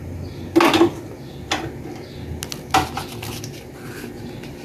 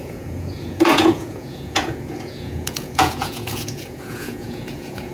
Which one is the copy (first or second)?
second